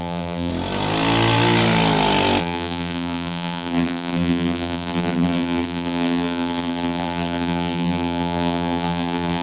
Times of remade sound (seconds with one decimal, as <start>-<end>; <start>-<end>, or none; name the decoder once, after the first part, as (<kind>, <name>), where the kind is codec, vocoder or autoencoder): 0.0-0.5 (vocoder, BigVGAN v2); 2.4-9.4